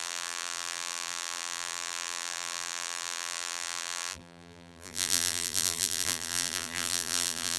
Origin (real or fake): fake